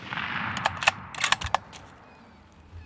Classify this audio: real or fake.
real